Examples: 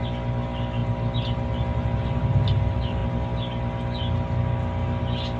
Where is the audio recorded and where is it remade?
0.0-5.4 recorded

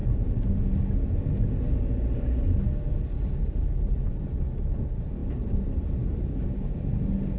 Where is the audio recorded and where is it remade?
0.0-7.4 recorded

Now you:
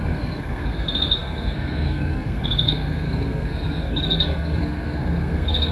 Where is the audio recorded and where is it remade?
0.0-5.7 remade

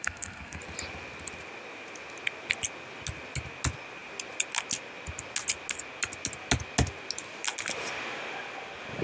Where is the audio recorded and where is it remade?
0.0-0.6 remade; 0.6-9.0 recorded

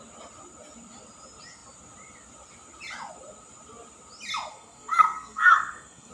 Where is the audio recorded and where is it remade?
0.0-4.5 recorded; 4.5-6.1 remade

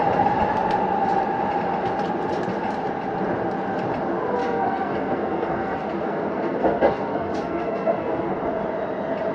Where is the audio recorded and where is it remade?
0.0-4.4 recorded; 4.4-8.4 remade; 8.4-9.3 recorded